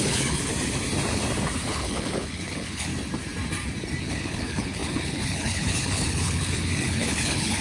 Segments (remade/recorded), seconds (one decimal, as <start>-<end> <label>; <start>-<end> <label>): 0.0-0.5 remade; 0.5-1.7 recorded; 1.7-2.9 remade; 2.9-4.0 recorded; 4.0-7.6 remade